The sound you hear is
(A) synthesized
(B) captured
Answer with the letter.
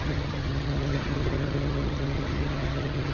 A